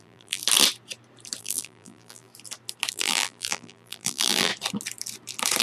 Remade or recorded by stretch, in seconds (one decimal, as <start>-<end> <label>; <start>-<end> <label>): 0.0-0.4 remade; 0.4-1.4 recorded; 1.4-2.3 remade; 2.3-2.9 recorded; 2.9-4.5 remade; 4.5-5.6 recorded